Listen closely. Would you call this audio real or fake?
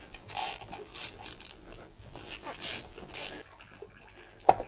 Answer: fake